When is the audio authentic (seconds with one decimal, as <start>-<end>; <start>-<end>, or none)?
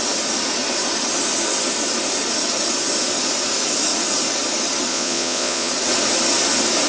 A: 0.0-4.9; 5.7-6.9